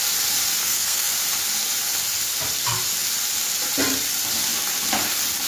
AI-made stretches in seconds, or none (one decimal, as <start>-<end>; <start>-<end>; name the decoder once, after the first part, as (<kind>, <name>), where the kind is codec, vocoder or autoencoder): 0.6-1.1 (codec, SNAC)